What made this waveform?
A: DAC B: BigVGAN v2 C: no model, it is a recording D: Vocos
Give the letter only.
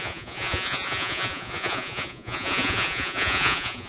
D